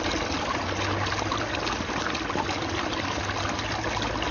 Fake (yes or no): no